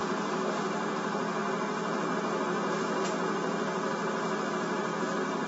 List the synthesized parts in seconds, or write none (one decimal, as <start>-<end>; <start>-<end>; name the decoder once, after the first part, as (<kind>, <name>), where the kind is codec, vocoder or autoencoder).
none

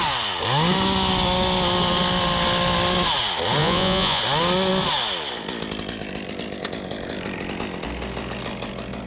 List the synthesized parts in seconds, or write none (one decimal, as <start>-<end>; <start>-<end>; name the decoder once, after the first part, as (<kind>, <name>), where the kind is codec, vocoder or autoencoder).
3.6-4.2 (vocoder, Vocos)